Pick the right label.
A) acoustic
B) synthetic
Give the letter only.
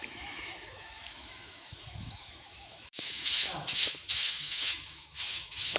B